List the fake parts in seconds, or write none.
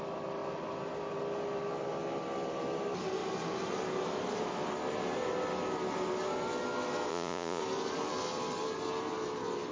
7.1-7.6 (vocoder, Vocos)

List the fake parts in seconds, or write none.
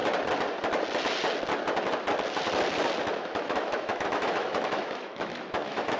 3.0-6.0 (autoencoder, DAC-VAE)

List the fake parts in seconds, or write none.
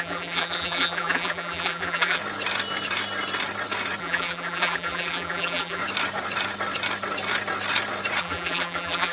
0.0-2.2 (vocoder, BigVGAN v2); 4.0-5.8; 8.2-9.1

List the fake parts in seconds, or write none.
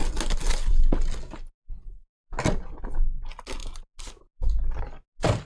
none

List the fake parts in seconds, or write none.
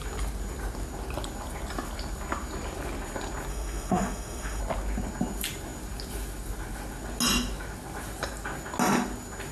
3.5-4.6 (autoencoder, DAC-VAE)